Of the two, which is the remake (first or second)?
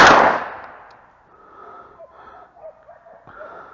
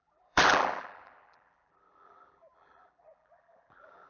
second